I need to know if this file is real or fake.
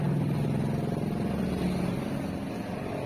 real